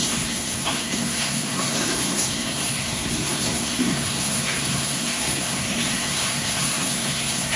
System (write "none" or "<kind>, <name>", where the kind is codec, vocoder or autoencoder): codec, SNAC